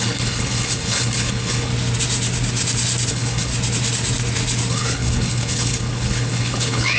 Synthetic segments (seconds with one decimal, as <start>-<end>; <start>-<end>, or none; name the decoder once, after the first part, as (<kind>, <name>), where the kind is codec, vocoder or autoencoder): 0.0-1.7 (codec, HILCodec); 3.1-3.5; 4.7-7.0